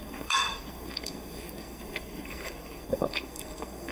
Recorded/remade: remade